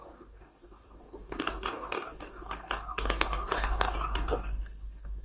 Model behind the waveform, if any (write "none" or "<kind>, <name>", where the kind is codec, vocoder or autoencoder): codec, DAC